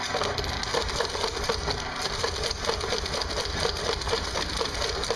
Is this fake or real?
real